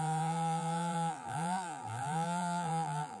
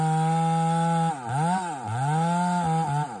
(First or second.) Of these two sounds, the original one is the second